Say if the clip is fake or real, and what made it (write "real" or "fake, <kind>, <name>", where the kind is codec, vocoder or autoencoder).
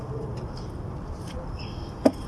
real